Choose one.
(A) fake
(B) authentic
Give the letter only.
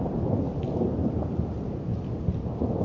B